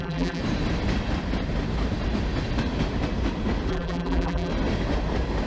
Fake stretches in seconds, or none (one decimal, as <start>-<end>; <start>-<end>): 0.0-0.4; 3.7-4.5

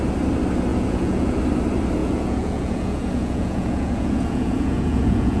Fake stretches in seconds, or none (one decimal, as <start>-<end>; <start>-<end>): 0.7-1.4; 2.0-5.4

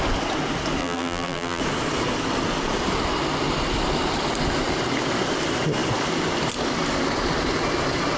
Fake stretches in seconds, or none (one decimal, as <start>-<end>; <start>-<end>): 0.8-1.6

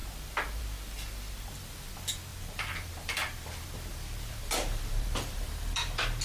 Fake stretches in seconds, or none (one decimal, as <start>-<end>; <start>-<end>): 2.3-6.2

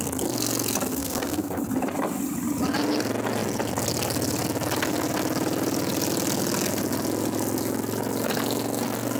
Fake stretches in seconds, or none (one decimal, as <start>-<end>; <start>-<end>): 0.9-1.6

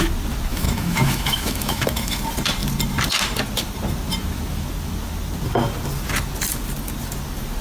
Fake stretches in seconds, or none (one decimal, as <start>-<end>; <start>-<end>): 0.5-2.2

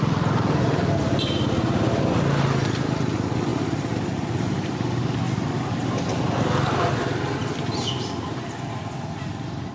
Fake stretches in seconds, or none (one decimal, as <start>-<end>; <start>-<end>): 3.5-4.1